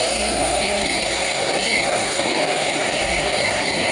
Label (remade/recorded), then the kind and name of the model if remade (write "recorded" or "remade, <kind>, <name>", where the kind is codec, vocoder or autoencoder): remade, codec, SNAC